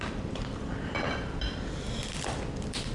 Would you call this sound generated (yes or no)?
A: yes